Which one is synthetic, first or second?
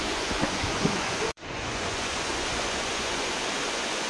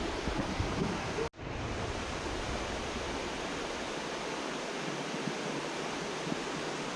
first